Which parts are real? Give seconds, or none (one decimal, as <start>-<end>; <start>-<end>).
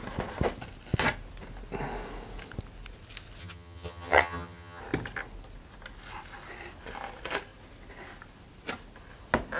0.0-3.4; 4.8-9.6